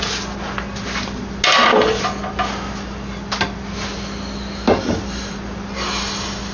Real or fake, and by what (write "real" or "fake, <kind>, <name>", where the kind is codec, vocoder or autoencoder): real